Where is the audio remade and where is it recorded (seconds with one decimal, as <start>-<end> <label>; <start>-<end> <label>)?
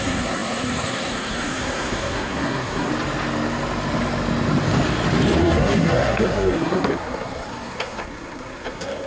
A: 0.0-2.9 remade; 2.9-5.4 recorded; 5.4-9.1 remade